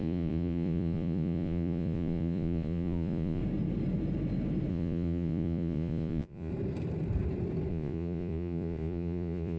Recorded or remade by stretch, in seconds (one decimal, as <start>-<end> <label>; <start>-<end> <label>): 0.0-3.4 remade; 3.4-4.7 recorded; 4.7-6.5 remade; 6.5-7.7 recorded; 7.7-9.6 remade